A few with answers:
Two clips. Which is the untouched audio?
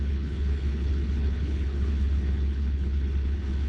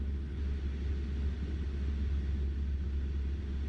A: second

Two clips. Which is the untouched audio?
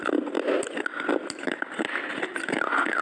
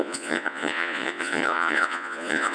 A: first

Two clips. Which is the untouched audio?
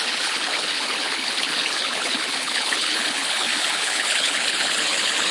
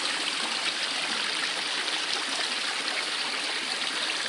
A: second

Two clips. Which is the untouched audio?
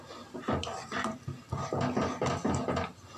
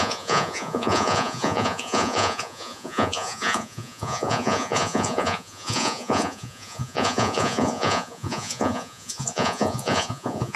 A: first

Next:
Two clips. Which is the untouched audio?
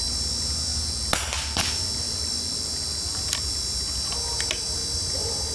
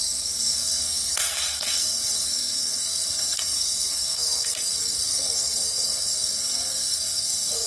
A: first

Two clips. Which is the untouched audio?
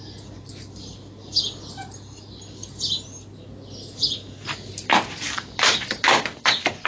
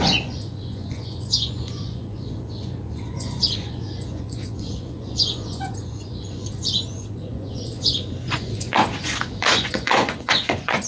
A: first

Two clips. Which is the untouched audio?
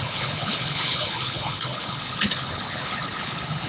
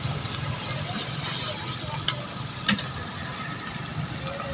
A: second